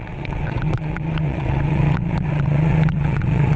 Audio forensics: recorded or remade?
remade